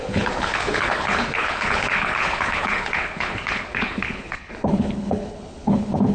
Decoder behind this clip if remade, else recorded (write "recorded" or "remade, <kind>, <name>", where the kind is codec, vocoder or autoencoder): remade, codec, HILCodec